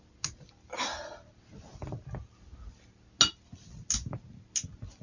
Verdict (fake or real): real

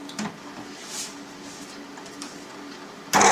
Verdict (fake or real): real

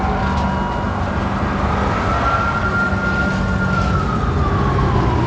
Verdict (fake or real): real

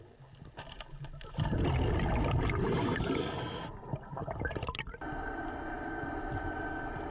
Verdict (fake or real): real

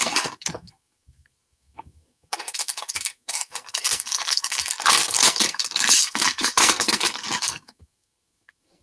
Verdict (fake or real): fake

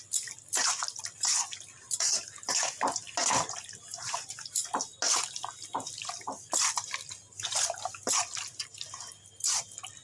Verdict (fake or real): real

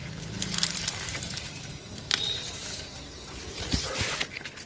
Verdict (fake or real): real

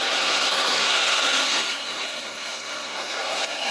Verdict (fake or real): fake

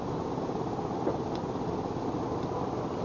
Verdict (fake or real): real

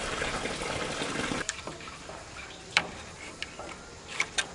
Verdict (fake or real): fake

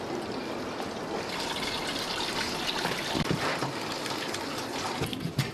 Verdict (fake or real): real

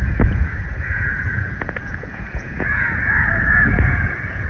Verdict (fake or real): fake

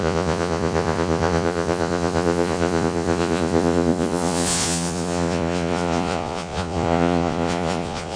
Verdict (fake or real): fake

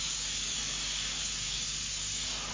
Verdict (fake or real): fake